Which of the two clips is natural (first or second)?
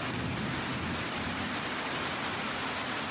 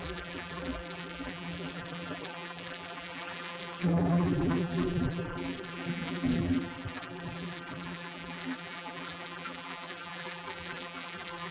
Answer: first